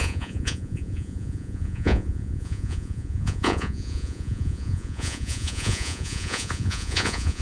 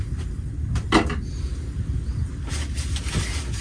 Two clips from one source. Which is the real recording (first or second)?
second